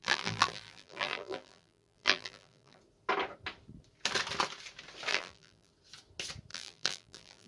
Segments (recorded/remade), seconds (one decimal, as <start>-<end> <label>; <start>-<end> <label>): 0.0-2.8 remade; 2.8-5.1 recorded; 5.1-5.7 remade; 5.7-6.5 recorded; 6.5-7.5 remade